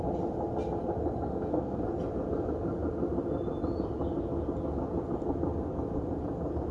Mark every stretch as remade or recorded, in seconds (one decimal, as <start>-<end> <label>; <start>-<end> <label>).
0.0-1.3 recorded; 1.3-1.8 remade; 1.8-6.7 recorded